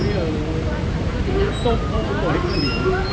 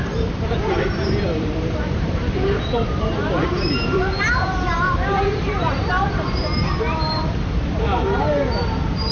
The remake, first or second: second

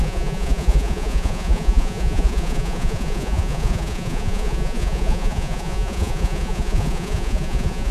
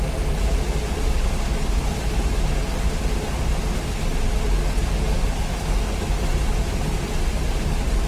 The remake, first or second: first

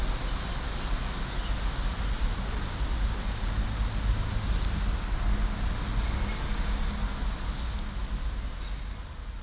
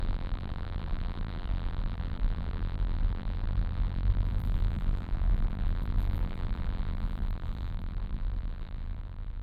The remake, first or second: second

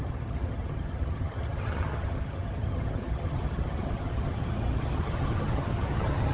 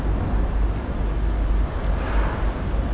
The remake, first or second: first